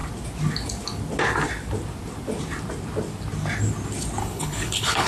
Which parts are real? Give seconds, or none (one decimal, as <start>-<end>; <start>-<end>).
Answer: 0.0-4.2